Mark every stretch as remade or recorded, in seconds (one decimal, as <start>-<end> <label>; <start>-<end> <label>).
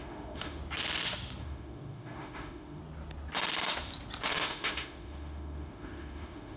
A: 0.0-0.6 remade; 0.6-1.4 recorded; 1.4-2.8 remade; 2.8-4.3 recorded; 4.3-6.6 remade